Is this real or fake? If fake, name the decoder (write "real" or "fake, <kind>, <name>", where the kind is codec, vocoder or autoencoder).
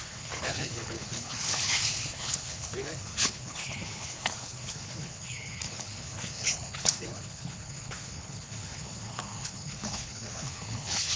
fake, codec, HILCodec